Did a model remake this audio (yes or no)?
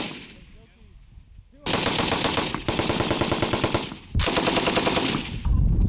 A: no